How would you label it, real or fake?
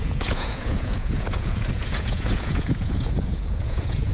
fake